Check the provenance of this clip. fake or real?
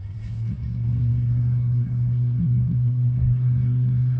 fake